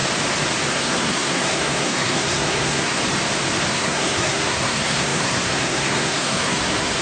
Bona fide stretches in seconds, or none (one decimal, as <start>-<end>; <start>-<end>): 0.0-0.7; 3.0-3.7